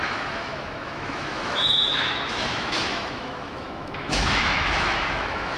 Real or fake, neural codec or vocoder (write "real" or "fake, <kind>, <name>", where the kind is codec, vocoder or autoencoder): fake, autoencoder, DAC-VAE